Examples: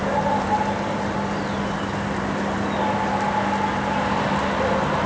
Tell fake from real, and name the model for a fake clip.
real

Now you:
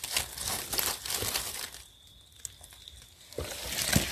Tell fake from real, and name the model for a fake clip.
real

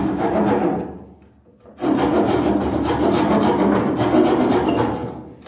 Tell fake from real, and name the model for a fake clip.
real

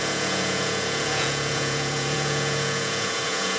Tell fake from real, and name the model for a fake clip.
fake, vocoder, Vocos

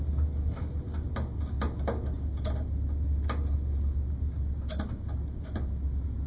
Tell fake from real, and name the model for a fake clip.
real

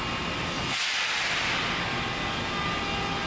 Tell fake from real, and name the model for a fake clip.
real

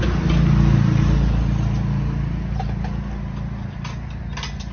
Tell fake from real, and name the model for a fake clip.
real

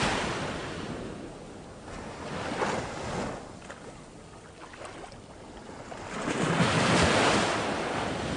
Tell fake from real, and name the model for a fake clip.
real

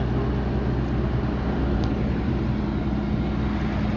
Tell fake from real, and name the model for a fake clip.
real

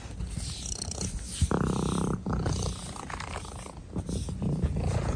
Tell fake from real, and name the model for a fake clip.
real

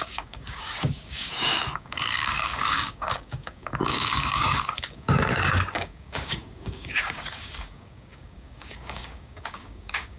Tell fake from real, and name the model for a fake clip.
fake, codec, DAC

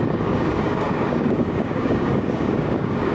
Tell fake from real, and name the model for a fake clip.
fake, codec, DAC